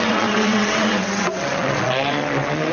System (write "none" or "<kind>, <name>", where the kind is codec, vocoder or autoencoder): vocoder, WaveNeXt